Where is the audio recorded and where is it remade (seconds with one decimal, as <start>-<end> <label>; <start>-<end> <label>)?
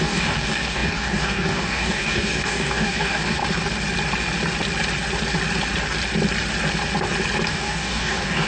0.0-3.4 remade; 3.4-7.5 recorded; 7.5-8.5 remade